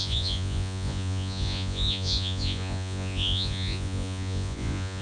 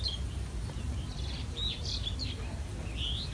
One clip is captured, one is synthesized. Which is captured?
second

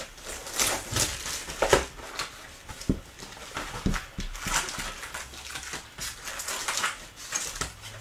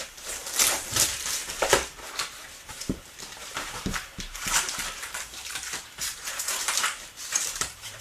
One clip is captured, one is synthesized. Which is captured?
first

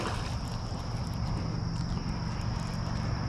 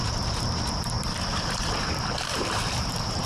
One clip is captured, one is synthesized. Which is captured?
first